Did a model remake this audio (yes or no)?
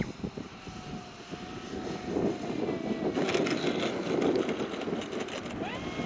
no